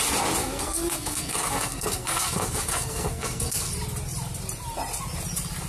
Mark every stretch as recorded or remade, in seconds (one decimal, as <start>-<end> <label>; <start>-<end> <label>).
0.0-0.4 recorded; 0.4-3.7 remade; 3.7-5.7 recorded